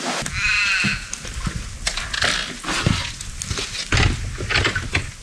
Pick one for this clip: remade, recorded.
recorded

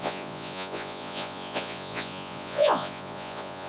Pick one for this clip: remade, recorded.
remade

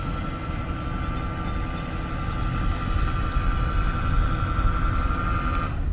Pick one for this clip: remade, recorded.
recorded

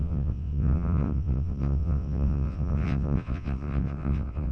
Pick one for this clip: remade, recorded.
remade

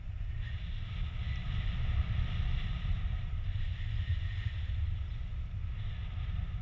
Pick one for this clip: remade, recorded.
recorded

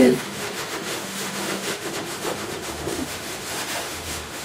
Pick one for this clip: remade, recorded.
remade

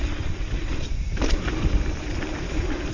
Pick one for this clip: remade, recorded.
recorded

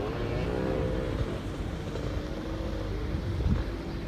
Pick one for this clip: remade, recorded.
recorded